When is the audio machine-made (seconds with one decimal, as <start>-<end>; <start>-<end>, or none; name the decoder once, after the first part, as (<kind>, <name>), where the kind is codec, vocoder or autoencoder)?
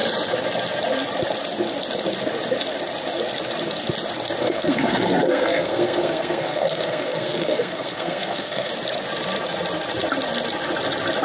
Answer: 4.4-8.7 (codec, SNAC)